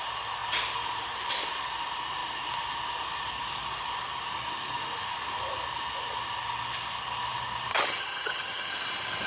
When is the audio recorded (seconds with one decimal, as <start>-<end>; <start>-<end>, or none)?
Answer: 0.0-7.7; 8.7-9.3